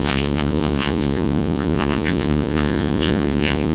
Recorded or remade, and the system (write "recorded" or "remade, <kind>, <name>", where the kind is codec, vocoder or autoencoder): remade, vocoder, Vocos